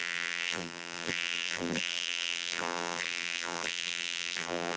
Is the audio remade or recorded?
remade